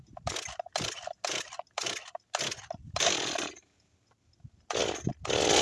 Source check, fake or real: real